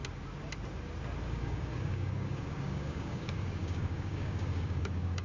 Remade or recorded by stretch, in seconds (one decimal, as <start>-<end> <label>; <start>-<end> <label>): 0.0-1.2 recorded; 1.2-5.2 remade